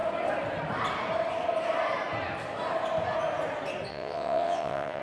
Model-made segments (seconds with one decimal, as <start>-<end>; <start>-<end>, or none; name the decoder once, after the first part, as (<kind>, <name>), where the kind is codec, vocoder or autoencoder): 3.9-5.0 (vocoder, WaveNeXt)